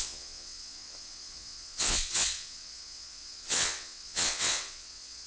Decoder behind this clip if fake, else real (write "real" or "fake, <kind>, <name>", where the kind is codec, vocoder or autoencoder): fake, vocoder, WaveNeXt